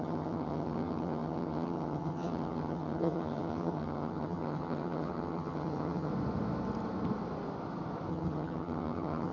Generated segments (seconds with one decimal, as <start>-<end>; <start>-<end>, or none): 0.0-6.1; 8.1-9.3